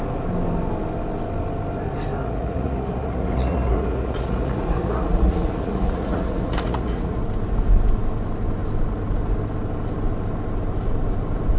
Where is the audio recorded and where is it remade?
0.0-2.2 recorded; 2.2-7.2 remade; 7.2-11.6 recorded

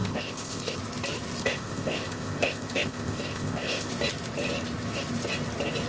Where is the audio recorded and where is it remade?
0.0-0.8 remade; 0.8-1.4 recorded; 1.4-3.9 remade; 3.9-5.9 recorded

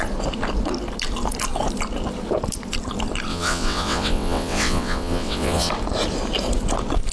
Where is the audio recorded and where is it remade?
0.0-3.3 recorded; 3.3-5.7 remade; 5.7-7.1 recorded